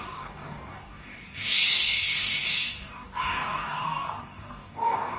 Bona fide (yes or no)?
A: no